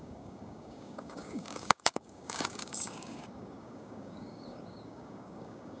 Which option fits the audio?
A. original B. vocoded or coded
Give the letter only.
B